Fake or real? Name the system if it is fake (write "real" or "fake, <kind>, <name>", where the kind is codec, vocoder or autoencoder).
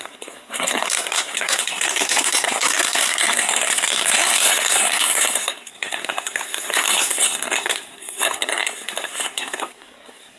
fake, codec, SNAC